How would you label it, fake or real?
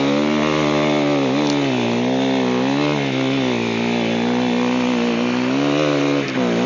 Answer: real